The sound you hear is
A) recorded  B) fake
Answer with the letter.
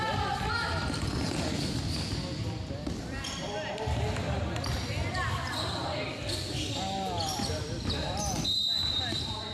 A